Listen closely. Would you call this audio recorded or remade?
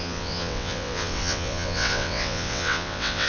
remade